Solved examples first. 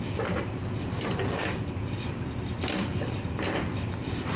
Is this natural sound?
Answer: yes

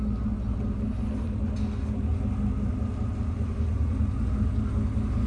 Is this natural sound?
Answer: yes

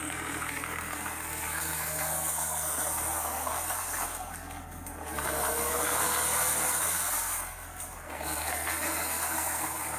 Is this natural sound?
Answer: no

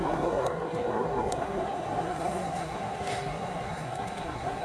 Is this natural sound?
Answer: no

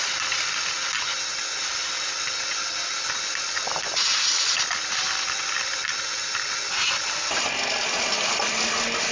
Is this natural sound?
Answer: yes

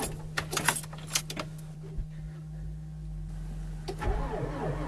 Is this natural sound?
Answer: yes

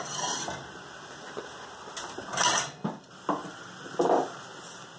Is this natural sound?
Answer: yes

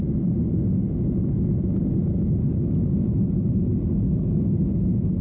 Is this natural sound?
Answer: yes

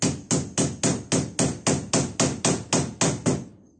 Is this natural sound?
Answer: yes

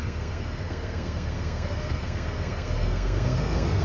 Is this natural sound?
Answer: no